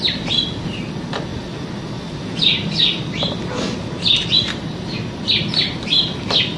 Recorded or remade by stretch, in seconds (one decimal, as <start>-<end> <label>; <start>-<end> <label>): 0.0-1.3 recorded; 1.3-5.3 remade; 5.3-6.6 recorded